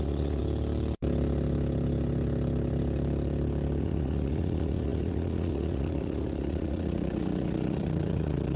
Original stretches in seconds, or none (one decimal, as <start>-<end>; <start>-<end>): 0.4-3.8